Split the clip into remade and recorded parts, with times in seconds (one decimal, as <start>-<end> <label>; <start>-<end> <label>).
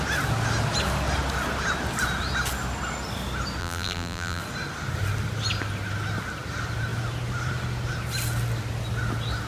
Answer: 0.0-3.6 recorded; 3.6-4.4 remade; 4.4-9.5 recorded